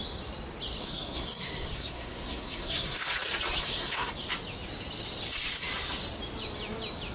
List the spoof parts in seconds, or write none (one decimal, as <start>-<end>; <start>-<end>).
0.8-3.1; 3.6-4.1